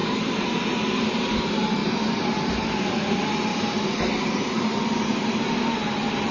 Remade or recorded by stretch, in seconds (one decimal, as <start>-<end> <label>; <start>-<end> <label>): 0.0-0.9 remade; 0.9-1.8 recorded; 1.8-2.5 remade; 2.5-3.5 recorded; 3.5-5.4 remade; 5.4-6.3 recorded